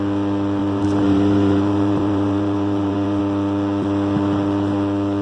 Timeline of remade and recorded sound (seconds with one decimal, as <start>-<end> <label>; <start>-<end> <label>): 0.0-0.6 recorded; 0.6-3.2 remade; 3.2-5.2 recorded